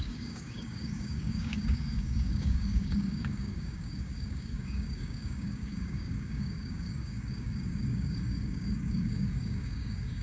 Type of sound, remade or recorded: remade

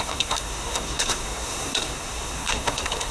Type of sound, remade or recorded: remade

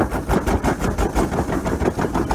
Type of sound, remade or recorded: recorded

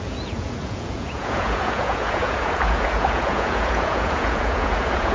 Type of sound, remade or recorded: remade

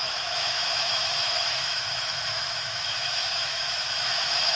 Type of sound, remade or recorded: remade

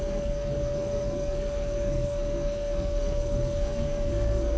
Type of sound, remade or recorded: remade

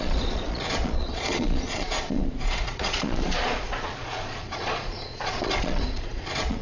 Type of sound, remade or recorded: remade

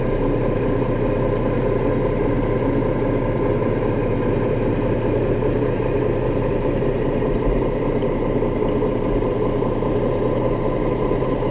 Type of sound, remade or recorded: remade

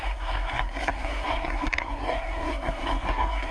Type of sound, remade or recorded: remade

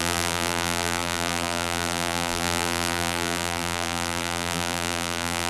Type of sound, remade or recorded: remade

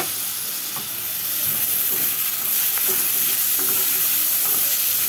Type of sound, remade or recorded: recorded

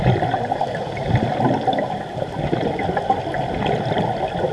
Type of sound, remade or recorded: recorded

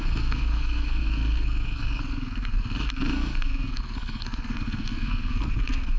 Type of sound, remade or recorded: remade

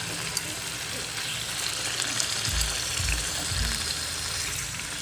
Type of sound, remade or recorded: recorded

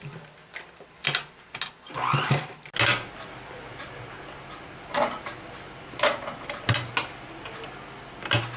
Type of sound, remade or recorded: recorded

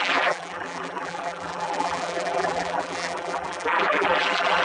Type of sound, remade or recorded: remade